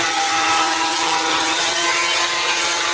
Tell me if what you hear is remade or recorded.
remade